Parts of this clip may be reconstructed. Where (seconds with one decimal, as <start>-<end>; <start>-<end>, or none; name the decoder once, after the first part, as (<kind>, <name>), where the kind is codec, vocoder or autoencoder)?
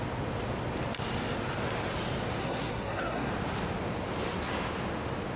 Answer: 2.4-3.3 (codec, SNAC)